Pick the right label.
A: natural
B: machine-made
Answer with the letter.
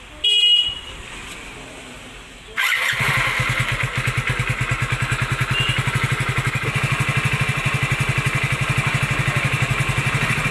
A